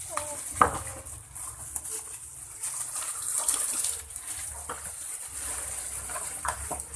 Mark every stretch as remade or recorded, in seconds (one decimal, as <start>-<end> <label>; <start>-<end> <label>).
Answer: 0.0-7.0 recorded